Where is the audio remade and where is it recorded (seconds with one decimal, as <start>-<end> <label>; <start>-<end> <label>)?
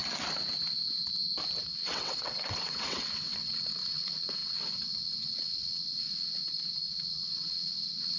0.0-1.6 recorded; 1.6-6.4 remade; 6.4-6.9 recorded; 6.9-8.2 remade